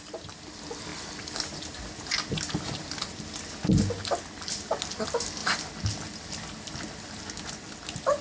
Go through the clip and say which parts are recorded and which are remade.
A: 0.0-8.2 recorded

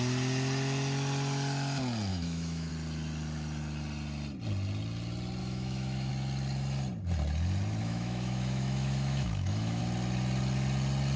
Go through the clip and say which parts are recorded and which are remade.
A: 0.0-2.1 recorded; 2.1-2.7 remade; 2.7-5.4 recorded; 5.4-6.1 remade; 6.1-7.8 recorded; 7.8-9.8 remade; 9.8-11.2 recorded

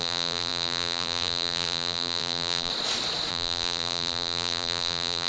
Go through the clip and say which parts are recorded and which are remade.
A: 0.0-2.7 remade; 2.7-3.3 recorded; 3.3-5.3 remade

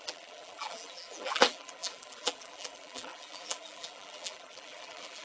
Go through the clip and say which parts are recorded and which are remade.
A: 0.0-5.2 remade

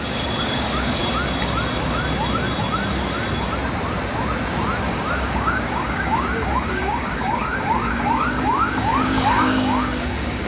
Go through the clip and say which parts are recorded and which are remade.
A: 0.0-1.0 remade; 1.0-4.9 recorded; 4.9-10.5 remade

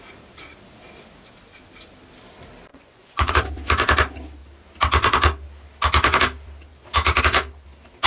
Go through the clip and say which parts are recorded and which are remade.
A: 0.0-2.7 recorded; 2.7-3.3 remade; 3.3-8.1 recorded